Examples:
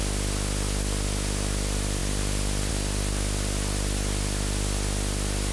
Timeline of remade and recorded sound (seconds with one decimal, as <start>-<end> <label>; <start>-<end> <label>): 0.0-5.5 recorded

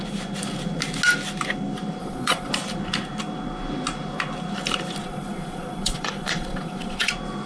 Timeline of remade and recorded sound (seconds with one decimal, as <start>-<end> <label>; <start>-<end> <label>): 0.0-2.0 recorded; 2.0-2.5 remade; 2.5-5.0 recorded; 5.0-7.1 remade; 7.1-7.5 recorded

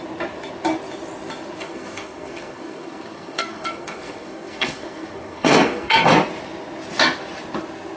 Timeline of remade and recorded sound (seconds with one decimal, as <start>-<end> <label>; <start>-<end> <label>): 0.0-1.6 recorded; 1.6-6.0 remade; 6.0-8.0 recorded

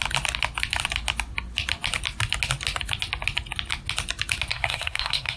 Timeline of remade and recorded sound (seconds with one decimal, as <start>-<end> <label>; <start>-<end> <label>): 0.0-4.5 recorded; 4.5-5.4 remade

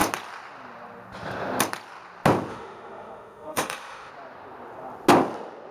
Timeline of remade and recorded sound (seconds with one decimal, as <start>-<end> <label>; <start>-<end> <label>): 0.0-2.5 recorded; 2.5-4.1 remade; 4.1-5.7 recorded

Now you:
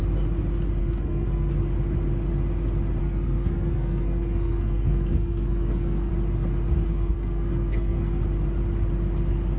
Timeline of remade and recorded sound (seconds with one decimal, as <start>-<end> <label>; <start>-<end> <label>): 0.0-0.8 recorded; 0.8-1.5 remade; 1.5-3.0 recorded; 3.0-6.1 remade; 6.1-6.9 recorded; 6.9-8.2 remade; 8.2-9.6 recorded

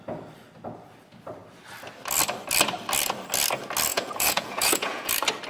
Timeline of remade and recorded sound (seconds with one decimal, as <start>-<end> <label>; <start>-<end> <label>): 0.0-3.9 recorded; 3.9-5.1 remade; 5.1-5.5 recorded